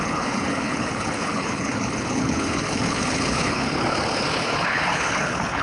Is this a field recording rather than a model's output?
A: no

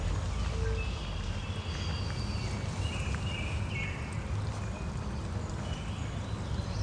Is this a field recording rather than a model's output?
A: yes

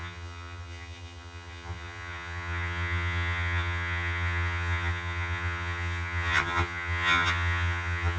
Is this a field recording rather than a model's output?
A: no